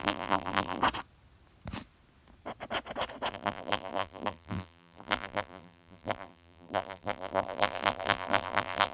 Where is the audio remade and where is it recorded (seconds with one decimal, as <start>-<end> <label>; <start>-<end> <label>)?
0.0-0.8 remade; 0.8-3.3 recorded; 3.3-8.9 remade

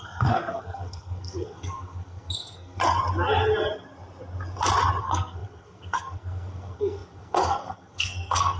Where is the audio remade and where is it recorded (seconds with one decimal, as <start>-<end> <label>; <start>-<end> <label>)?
0.0-2.8 remade; 2.8-5.0 recorded; 5.0-8.6 remade

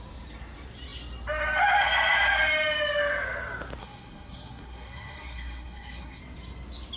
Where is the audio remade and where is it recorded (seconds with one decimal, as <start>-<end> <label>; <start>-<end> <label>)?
0.0-3.8 recorded; 3.8-6.2 remade; 6.2-7.0 recorded